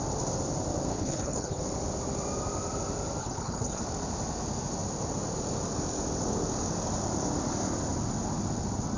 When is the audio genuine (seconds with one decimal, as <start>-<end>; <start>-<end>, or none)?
0.0-0.9; 1.6-3.2; 3.8-9.0